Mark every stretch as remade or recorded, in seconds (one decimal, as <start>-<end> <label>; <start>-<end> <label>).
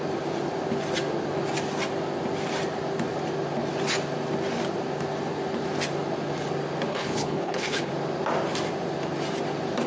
0.0-6.9 recorded; 6.9-7.9 remade; 7.9-9.9 recorded